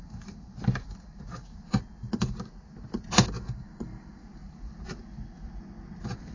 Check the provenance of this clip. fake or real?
real